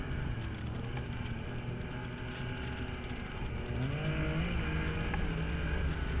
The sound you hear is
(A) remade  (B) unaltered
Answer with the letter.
B